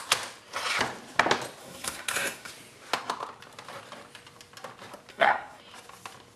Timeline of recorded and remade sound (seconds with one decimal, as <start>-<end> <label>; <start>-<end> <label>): 0.0-1.6 recorded; 1.6-2.5 remade; 2.5-5.1 recorded; 5.1-5.6 remade; 5.6-6.4 recorded